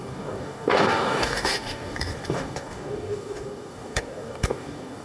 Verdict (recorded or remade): remade